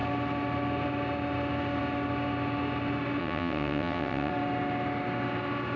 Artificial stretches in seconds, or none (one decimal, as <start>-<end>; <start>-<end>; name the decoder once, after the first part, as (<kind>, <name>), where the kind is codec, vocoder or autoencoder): 3.2-4.3 (vocoder, WaveNeXt)